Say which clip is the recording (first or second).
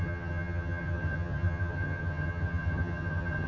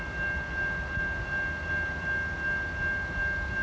second